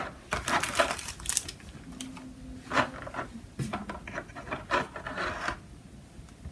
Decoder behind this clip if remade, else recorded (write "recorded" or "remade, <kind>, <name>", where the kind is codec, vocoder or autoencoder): recorded